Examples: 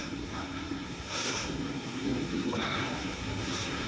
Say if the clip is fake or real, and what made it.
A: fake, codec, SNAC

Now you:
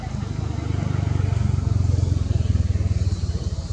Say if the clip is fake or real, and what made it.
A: real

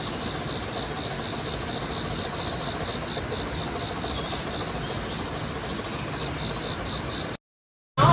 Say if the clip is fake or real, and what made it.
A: real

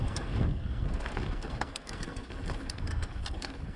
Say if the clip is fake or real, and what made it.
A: fake, codec, SNAC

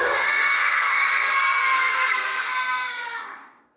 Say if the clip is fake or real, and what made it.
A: fake, codec, SNAC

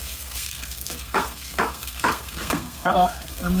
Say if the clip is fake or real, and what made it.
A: fake, codec, SNAC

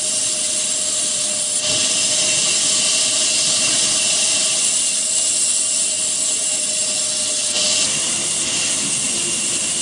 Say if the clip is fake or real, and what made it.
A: real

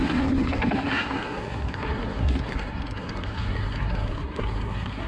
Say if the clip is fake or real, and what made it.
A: fake, codec, SNAC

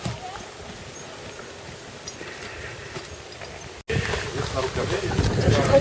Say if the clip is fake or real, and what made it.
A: real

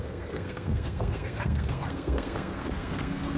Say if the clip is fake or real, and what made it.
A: fake, codec, SNAC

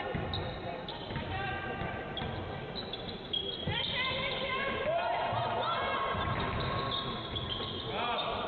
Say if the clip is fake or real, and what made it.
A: real